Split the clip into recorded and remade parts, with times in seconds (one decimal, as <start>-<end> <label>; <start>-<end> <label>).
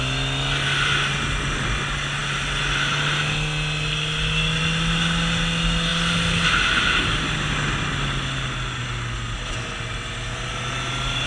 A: 0.0-11.3 recorded